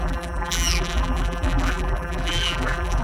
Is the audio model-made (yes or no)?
yes